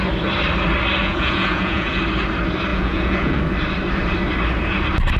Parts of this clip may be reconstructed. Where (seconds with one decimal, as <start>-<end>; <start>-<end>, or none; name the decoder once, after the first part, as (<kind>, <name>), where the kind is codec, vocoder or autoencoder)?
1.0-2.0 (vocoder, Vocos); 2.7-3.4